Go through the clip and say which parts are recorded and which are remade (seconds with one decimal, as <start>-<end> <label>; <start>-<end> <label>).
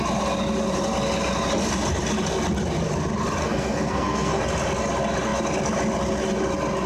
0.0-3.4 recorded; 3.4-4.4 remade; 4.4-6.9 recorded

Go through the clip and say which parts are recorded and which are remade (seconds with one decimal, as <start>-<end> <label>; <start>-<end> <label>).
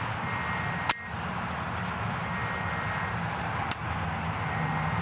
0.0-5.0 recorded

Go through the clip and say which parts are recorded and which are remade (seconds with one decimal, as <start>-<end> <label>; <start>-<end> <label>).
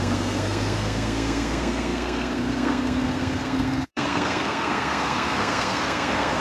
0.0-6.4 remade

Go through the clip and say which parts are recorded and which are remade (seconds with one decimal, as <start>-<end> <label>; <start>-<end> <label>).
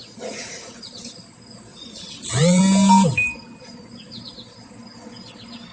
0.0-0.9 remade; 0.9-1.7 recorded; 1.7-2.6 remade; 2.6-5.7 recorded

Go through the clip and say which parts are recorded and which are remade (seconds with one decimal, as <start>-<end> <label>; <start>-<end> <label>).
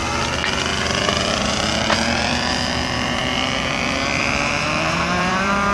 0.0-0.8 recorded; 0.8-5.7 remade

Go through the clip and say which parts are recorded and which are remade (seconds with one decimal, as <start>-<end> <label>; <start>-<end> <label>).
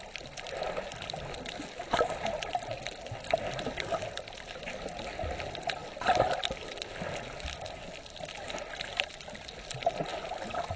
0.0-10.8 recorded